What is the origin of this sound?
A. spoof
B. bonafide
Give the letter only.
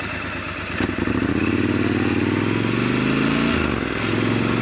B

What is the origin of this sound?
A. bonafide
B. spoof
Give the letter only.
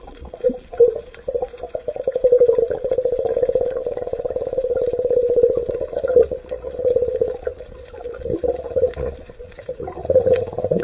B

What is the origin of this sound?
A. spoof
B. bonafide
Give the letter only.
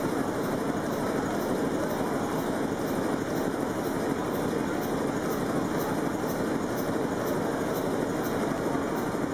B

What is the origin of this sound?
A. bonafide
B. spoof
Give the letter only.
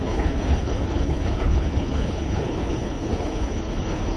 B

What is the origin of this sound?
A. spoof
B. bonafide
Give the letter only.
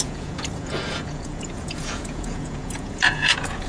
A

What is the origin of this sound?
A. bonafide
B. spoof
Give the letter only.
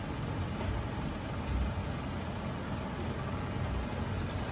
A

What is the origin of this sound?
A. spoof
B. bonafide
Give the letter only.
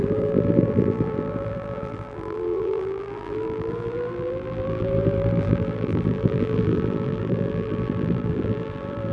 A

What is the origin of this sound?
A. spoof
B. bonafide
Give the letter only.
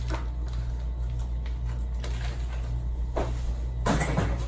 B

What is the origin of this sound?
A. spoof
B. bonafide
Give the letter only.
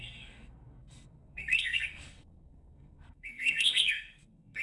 A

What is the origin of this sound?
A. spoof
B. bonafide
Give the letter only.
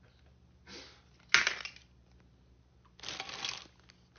B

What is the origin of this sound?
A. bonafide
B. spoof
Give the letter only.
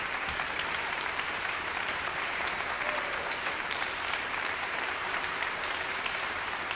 B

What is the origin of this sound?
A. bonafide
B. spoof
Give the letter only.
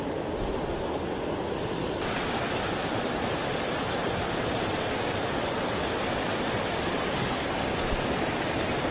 A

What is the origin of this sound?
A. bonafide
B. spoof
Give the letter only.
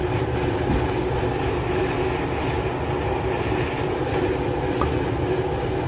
A